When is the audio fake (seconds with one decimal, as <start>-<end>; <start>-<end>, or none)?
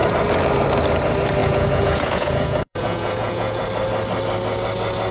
1.4-3.6